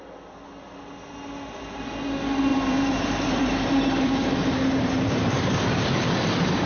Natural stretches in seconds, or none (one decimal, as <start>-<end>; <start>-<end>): 0.0-2.5